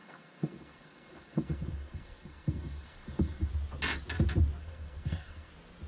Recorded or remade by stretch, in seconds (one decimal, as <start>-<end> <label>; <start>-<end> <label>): 0.0-3.5 remade; 3.5-4.6 recorded; 4.6-5.5 remade; 5.5-5.9 recorded